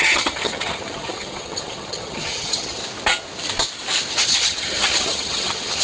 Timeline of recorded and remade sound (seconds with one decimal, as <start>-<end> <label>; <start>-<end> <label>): 0.0-2.8 remade; 2.8-4.1 recorded; 4.1-5.8 remade